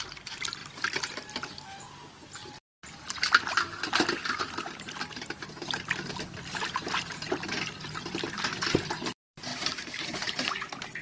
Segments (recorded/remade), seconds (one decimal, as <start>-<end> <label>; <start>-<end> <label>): 0.0-4.2 remade; 4.2-6.1 recorded; 6.1-11.0 remade